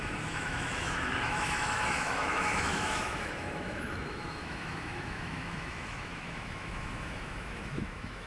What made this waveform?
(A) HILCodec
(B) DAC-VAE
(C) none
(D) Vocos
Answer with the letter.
B